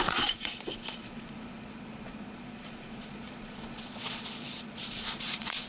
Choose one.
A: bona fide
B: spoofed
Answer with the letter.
B